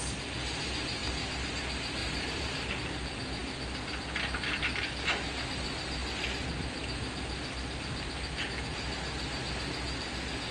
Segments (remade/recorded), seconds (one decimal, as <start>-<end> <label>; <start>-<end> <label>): 0.0-2.0 recorded; 2.0-2.7 remade; 2.7-10.5 recorded